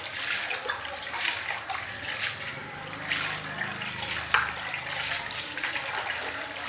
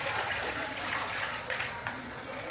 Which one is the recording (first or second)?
first